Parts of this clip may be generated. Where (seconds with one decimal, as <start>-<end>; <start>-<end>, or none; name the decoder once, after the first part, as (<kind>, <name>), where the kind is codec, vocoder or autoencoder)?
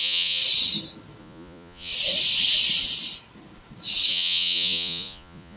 0.0-0.4 (vocoder, Vocos); 1.2-1.9; 4.1-5.6